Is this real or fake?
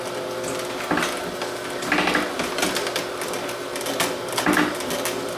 real